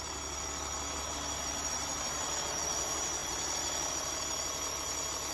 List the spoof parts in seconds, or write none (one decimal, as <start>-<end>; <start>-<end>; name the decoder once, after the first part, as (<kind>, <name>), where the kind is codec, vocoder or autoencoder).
none